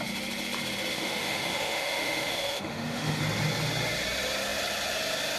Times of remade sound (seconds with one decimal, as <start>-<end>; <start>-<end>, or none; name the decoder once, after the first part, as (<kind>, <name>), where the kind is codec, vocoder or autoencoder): 0.9-3.2 (autoencoder, DAC-VAE)